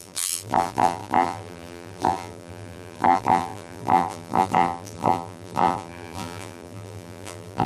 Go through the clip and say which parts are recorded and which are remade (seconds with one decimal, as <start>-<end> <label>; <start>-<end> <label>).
0.0-7.7 remade